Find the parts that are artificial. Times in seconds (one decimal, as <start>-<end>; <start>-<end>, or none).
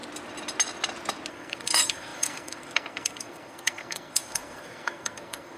1.3-5.6